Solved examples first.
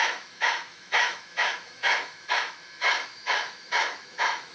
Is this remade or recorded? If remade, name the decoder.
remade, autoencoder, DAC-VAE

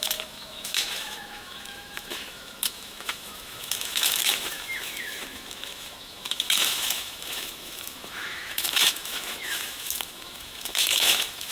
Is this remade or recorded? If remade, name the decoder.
remade, autoencoder, DAC-VAE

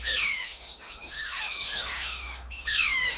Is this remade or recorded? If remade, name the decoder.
remade, autoencoder, DAC-VAE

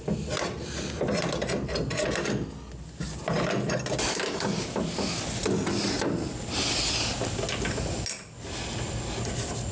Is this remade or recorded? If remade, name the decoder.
recorded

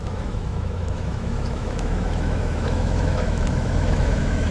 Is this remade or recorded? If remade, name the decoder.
remade, autoencoder, DAC-VAE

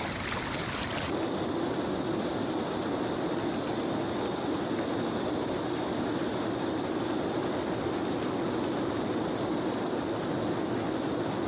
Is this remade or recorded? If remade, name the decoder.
recorded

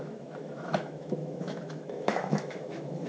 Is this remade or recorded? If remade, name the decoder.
remade, autoencoder, DAC-VAE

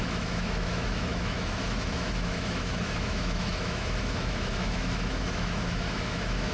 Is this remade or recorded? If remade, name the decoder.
remade, autoencoder, DAC-VAE